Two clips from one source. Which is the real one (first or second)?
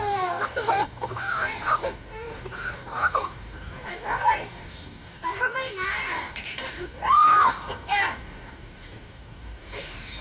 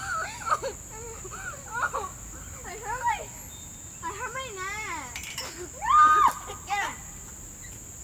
second